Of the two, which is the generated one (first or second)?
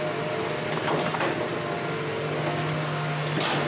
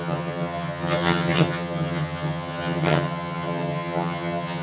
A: second